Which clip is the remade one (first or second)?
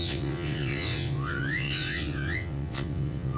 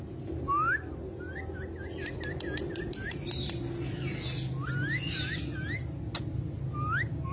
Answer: first